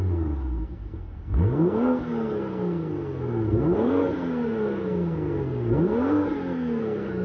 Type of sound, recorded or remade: remade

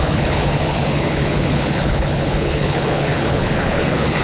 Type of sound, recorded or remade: remade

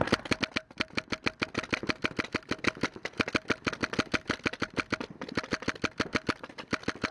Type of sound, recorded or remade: recorded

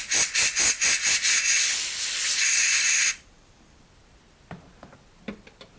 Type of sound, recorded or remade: recorded